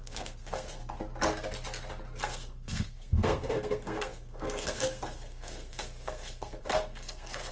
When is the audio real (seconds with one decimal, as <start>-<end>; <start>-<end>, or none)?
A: 0.8-2.2